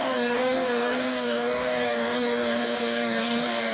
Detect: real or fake fake